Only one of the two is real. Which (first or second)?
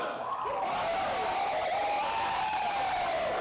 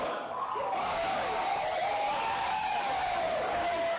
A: first